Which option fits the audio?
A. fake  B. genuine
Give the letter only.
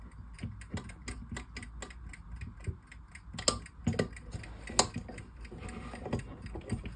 B